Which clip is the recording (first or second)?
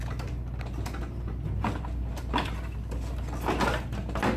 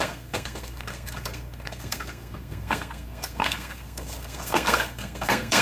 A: first